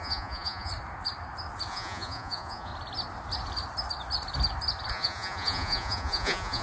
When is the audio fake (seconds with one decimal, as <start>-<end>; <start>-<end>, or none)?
0.0-0.7; 1.7-2.7; 4.9-6.6